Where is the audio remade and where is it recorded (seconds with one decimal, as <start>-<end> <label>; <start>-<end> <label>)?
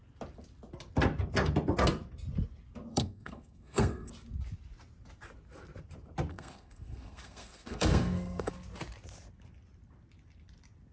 0.0-2.9 recorded; 2.9-4.1 remade; 4.1-6.3 recorded; 6.3-8.5 remade; 8.5-10.9 recorded